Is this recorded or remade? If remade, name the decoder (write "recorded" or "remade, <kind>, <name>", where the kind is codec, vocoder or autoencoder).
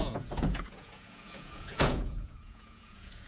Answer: remade, vocoder, Vocos